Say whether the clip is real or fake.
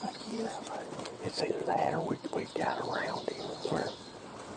fake